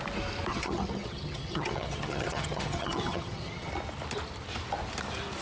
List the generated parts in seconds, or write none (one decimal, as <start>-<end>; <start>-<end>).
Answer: 0.5-3.7